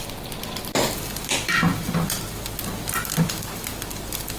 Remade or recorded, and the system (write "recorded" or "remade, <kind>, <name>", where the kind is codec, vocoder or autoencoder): recorded